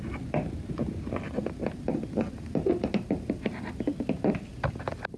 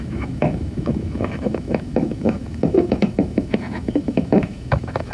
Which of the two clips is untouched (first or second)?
first